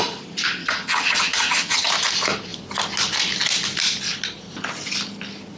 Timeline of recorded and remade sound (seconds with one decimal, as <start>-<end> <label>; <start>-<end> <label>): 0.0-0.6 recorded; 0.6-1.9 remade; 1.9-5.6 recorded